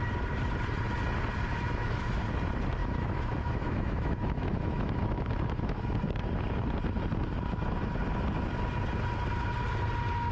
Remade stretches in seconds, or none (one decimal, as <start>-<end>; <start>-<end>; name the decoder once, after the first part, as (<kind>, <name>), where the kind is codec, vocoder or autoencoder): 1.5-2.2 (autoencoder, DAC-VAE); 2.8-5.8